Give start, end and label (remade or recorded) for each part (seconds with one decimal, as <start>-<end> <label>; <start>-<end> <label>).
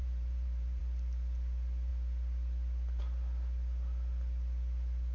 0.0-0.8 remade; 0.8-5.1 recorded